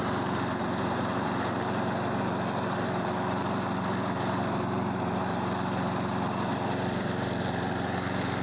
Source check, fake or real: fake